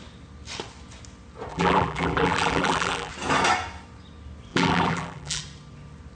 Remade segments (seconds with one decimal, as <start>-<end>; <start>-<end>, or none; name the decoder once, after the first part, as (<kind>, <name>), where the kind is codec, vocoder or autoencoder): 1.5-3.1 (vocoder, BigVGAN v2); 4.5-5.4